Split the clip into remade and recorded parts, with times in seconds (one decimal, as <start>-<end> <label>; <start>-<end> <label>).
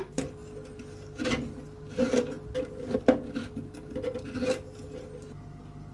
0.0-5.9 recorded